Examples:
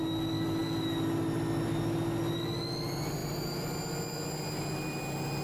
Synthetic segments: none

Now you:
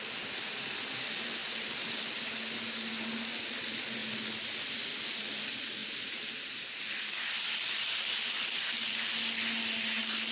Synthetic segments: 5.8-9.1 (vocoder, BigVGAN v2)

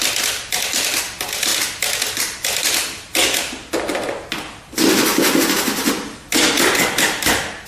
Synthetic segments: none

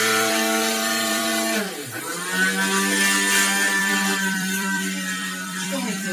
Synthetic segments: 0.0-1.3 (vocoder, BigVGAN v2); 3.8-6.1

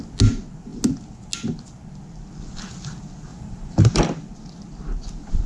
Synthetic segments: 3.3-4.0 (vocoder, BigVGAN v2)

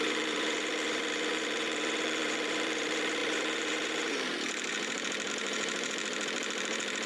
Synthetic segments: 0.0-7.1 (vocoder, BigVGAN v2)

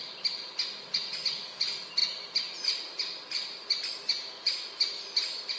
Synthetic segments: none

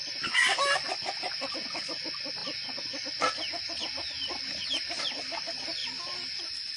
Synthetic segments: 0.0-6.8 (vocoder, BigVGAN v2)